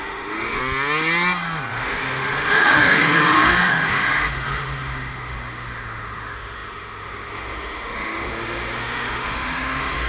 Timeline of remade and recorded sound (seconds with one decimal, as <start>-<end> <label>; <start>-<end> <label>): 0.0-0.6 remade; 0.6-1.7 recorded; 1.7-10.1 remade